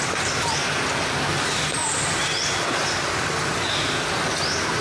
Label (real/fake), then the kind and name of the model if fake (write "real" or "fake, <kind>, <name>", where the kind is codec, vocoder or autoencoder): real